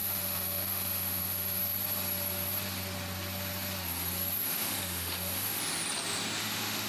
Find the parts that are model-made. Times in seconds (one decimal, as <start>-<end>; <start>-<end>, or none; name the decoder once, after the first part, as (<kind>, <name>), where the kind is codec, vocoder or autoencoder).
0.0-1.6 (autoencoder, DAC-VAE); 4.5-5.6; 6.4-6.9

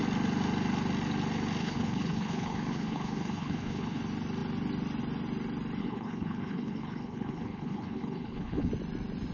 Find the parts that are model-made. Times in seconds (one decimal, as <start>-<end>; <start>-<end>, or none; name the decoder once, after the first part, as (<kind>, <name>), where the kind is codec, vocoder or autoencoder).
1.6-4.0 (codec, HILCodec); 5.8-8.7

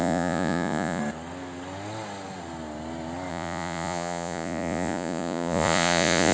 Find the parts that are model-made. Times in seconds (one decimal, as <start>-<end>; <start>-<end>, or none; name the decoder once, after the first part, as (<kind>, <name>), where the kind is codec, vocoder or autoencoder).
0.0-1.0 (vocoder, Vocos); 3.3-6.3

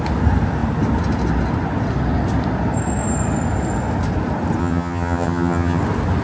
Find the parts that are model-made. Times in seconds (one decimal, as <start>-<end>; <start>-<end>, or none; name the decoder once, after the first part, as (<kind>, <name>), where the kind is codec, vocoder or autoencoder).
4.6-5.8 (vocoder, HiFi-GAN)

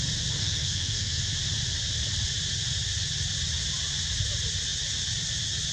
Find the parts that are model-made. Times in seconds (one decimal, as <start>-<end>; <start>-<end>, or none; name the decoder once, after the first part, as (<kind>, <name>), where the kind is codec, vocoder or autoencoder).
0.4-1.2 (codec, SNAC)

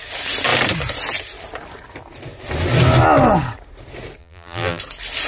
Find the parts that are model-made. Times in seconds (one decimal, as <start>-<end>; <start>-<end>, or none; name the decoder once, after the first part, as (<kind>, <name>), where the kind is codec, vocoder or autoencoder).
4.2-4.8 (vocoder, BigVGAN v2)